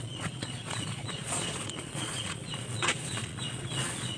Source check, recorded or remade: remade